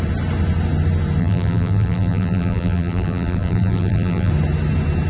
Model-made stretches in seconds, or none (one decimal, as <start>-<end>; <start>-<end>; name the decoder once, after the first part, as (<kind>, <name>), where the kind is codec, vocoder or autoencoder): 1.2-4.3 (vocoder, BigVGAN v2)